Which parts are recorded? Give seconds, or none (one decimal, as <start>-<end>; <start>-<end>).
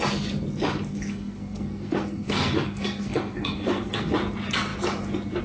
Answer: 0.0-0.9; 4.1-5.4